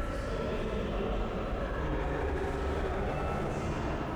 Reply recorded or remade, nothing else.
recorded